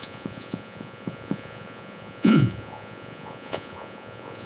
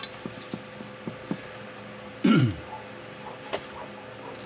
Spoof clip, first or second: first